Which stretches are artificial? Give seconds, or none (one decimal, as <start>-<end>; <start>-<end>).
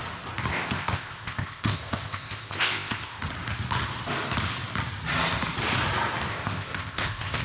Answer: 0.5-3.2; 6.3-7.4